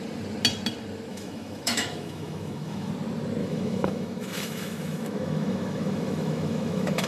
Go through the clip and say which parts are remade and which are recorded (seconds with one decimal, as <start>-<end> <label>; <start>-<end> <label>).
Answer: 0.0-1.1 recorded; 1.1-2.9 remade; 2.9-3.4 recorded; 3.4-7.1 remade